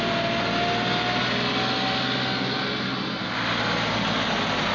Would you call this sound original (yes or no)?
yes